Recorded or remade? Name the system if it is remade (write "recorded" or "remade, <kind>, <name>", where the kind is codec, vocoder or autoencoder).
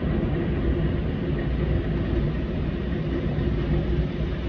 recorded